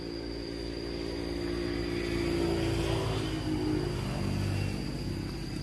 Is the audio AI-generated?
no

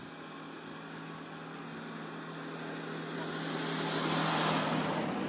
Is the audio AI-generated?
no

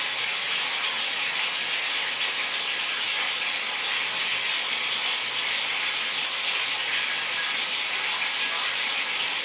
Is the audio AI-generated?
no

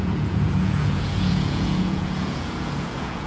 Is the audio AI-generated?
yes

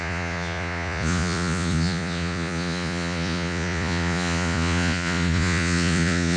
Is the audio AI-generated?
yes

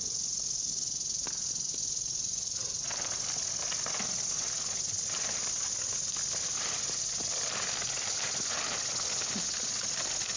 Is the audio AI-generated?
no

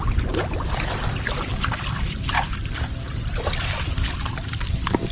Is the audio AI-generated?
no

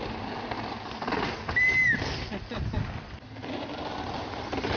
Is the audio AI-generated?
no